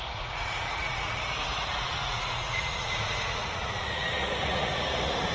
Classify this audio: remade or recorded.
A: remade